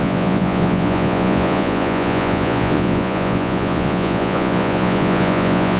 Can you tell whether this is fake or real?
fake